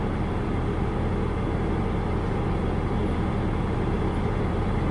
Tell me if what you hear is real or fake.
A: real